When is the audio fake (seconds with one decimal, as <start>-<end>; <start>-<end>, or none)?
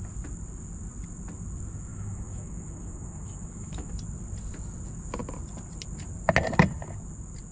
1.9-3.9